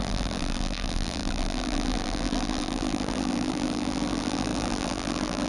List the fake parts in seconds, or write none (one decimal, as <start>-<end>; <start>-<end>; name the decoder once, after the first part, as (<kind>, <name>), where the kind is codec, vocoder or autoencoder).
0.0-5.5 (vocoder, BigVGAN v2)